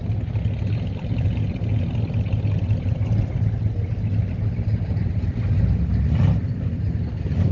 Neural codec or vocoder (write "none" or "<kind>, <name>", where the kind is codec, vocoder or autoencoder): none